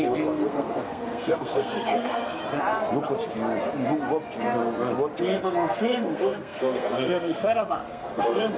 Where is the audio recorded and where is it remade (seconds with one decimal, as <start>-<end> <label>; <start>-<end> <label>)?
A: 0.0-2.4 remade; 2.4-5.2 recorded; 5.2-8.6 remade

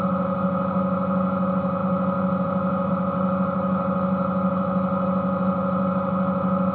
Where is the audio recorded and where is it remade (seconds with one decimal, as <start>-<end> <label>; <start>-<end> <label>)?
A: 0.0-6.7 recorded

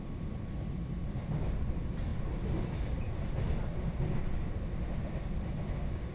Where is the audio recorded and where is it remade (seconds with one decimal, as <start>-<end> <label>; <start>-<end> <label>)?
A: 0.0-2.1 remade; 2.1-6.1 recorded

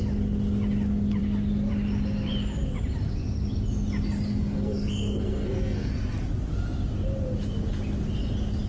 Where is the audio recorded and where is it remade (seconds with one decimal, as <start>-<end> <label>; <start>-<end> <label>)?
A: 0.0-4.3 recorded; 4.3-5.9 remade; 5.9-8.7 recorded

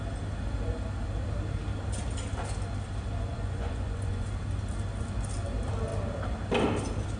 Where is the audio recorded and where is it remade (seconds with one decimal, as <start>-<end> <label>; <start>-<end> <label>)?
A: 0.0-3.3 recorded; 3.3-4.3 remade; 4.3-7.2 recorded